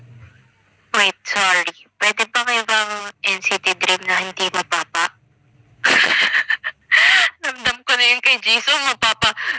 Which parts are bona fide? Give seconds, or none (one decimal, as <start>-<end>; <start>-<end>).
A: 0.0-5.6; 6.2-9.6